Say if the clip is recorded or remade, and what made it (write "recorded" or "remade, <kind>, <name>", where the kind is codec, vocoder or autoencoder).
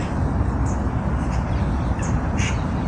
recorded